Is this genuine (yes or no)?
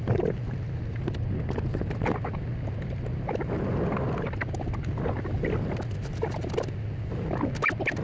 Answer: yes